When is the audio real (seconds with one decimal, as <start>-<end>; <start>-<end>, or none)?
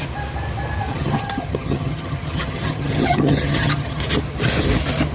0.0-0.9; 4.0-5.1